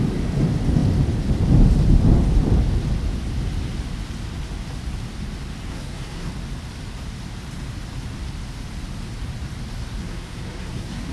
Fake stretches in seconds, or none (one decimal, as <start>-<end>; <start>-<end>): 5.7-6.3; 10.0-11.1